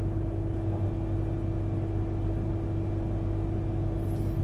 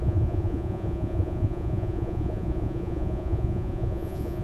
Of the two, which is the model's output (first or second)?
second